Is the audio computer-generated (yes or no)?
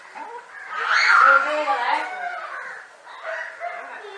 no